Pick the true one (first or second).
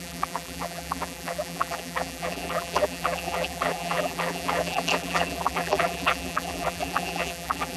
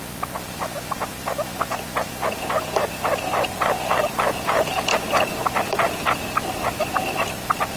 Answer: second